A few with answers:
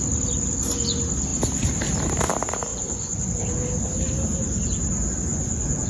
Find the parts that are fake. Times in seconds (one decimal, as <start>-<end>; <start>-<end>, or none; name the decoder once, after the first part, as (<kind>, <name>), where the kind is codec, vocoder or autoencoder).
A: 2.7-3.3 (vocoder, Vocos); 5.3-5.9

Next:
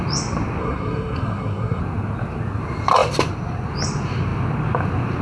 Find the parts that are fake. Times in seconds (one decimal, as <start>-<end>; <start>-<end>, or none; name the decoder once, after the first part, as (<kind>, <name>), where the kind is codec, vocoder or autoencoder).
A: 0.6-1.8 (codec, SNAC)

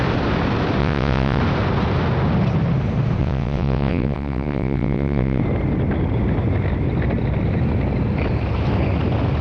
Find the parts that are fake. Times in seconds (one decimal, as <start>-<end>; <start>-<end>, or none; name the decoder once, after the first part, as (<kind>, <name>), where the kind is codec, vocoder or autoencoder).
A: 0.8-1.4 (vocoder, WaveNeXt); 3.2-5.4

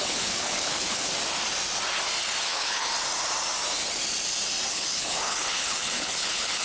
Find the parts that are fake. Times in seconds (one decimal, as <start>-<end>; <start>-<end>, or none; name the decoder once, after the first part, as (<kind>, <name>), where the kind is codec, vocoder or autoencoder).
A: 0.0-1.1 (codec, HILCodec); 2.4-2.9; 4.7-6.6

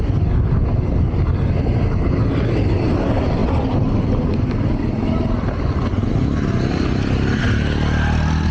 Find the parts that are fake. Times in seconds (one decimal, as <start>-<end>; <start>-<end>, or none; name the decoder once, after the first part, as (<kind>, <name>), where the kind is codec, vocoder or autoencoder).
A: none

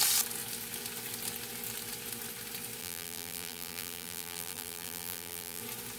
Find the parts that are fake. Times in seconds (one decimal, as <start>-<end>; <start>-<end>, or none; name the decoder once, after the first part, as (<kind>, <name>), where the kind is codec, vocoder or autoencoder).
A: 2.8-5.6 (vocoder, BigVGAN v2)